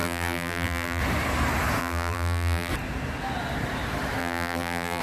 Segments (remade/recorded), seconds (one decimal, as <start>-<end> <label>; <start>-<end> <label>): 0.0-1.0 remade; 1.0-1.8 recorded; 1.8-2.7 remade; 2.7-4.2 recorded; 4.2-5.0 remade